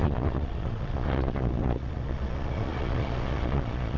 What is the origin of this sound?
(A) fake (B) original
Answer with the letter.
A